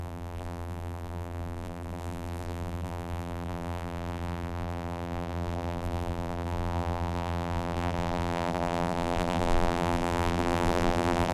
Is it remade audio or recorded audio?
remade